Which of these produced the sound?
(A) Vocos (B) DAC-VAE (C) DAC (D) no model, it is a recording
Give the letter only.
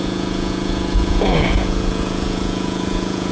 A